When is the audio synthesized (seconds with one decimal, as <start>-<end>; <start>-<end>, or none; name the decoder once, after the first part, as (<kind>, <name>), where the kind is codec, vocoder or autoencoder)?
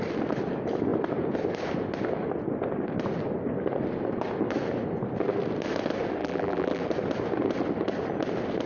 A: 6.2-6.8 (vocoder, BigVGAN v2)